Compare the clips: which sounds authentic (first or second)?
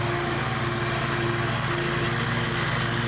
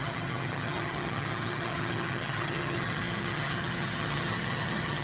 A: first